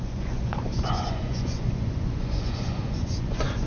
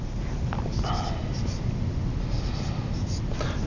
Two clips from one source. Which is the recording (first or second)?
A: second